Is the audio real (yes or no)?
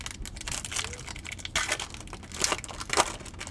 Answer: yes